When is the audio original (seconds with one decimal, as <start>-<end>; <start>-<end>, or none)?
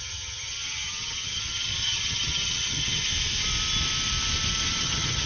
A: 3.1-4.8